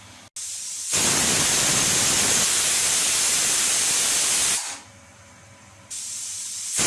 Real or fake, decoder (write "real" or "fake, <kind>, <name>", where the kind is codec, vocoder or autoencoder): real